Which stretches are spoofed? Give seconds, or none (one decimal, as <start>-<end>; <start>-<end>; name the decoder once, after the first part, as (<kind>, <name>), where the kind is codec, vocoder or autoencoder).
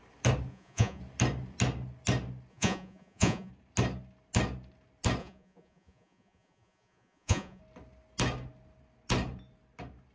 0.5-1.0 (vocoder, Vocos); 2.5-3.5; 5.2-7.6